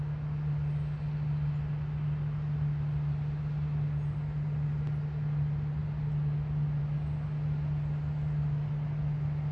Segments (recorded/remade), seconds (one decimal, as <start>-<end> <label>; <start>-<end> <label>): 0.0-9.5 recorded